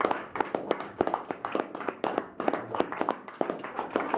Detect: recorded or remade remade